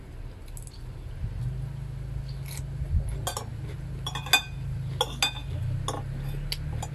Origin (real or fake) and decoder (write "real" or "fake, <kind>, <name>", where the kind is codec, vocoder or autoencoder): real